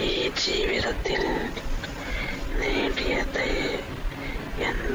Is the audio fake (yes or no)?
no